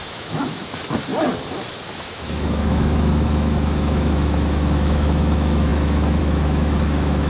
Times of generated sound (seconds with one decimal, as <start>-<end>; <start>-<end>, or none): 0.0-1.1; 1.9-7.3